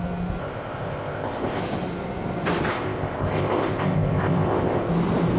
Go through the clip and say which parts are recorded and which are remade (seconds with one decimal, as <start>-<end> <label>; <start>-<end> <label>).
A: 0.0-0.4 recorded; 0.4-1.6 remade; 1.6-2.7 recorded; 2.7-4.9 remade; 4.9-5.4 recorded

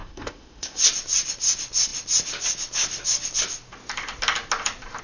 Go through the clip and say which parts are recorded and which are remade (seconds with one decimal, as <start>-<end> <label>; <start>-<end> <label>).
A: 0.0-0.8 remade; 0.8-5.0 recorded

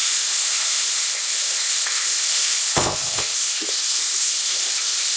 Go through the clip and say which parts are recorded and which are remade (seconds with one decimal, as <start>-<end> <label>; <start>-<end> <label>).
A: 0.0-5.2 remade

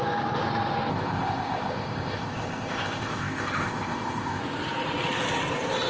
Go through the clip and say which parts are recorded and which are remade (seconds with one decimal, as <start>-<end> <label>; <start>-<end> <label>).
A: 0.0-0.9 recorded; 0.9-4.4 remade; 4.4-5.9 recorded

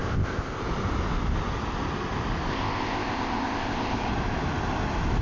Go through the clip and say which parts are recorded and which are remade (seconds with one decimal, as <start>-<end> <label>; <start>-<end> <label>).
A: 0.0-0.6 remade; 0.6-2.5 recorded; 2.5-4.1 remade; 4.1-5.2 recorded

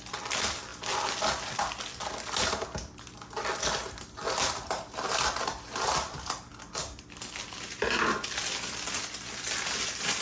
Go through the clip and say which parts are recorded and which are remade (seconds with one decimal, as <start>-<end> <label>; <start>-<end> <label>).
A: 0.0-10.2 recorded

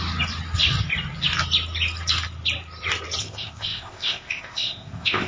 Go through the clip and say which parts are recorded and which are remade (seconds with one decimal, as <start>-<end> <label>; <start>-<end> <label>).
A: 0.0-3.2 recorded; 3.2-5.3 remade